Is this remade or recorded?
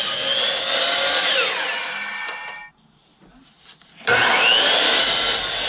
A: recorded